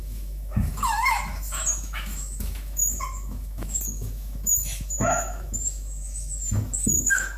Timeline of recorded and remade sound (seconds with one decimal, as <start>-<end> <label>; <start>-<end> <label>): 0.0-7.4 remade